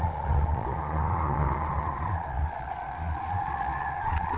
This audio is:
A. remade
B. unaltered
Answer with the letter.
A